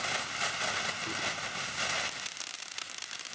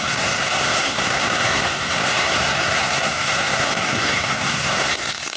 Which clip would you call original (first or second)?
first